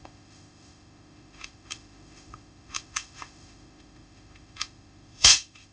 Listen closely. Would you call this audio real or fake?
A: fake